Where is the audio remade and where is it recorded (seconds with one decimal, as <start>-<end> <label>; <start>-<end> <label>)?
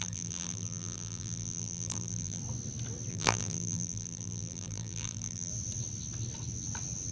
0.0-2.4 remade; 2.4-3.1 recorded; 3.1-5.5 remade; 5.5-7.1 recorded